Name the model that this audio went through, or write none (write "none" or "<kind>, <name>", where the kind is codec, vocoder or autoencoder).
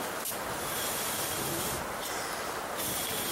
none